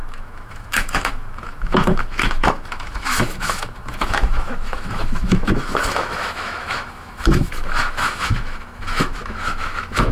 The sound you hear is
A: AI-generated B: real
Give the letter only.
A